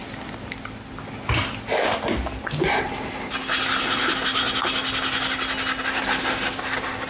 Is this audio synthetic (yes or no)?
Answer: no